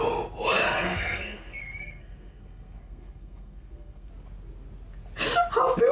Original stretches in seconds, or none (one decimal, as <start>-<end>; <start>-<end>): 0.0-0.6; 4.1-5.9